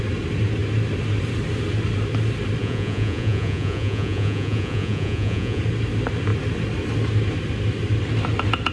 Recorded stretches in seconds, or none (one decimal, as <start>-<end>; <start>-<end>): 0.0-2.6; 5.6-8.7